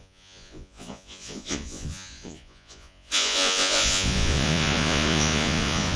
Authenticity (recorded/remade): remade